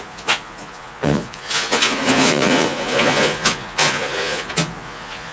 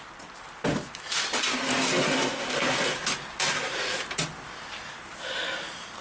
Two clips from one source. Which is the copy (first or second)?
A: first